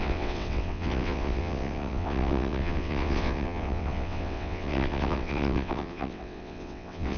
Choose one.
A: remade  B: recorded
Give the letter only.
A